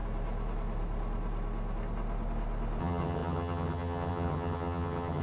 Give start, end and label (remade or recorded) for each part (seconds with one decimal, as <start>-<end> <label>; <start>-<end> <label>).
0.0-2.8 recorded; 2.8-5.2 remade